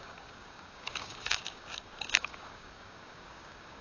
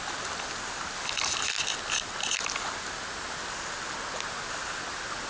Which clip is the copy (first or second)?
first